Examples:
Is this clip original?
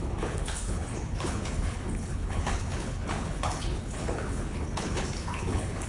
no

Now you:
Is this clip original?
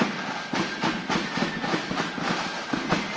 yes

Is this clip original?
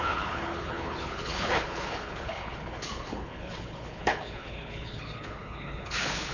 no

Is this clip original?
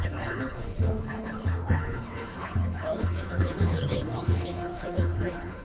no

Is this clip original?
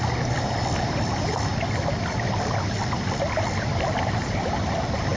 yes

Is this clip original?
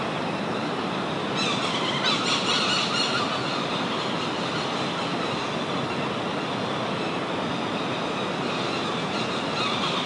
yes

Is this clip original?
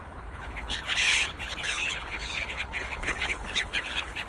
no